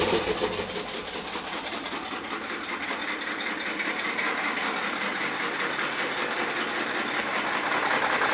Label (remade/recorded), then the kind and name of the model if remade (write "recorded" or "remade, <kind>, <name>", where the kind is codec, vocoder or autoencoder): remade, vocoder, BigVGAN v2